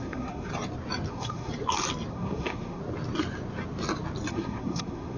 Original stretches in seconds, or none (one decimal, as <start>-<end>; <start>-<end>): 0.5-1.1; 1.5-2.1; 2.8-4.3